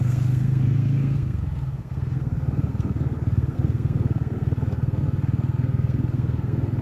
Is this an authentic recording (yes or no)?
no